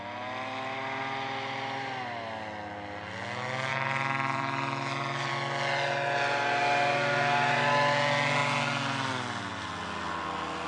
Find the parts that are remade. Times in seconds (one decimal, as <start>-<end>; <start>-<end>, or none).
3.7-5.3